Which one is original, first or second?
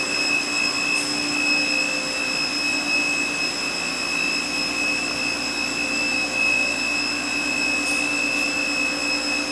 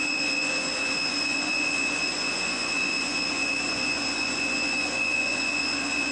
first